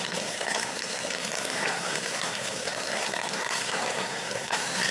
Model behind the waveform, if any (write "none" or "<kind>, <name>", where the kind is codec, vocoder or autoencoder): codec, SNAC